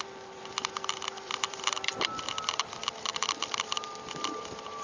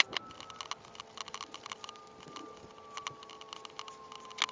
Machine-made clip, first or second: first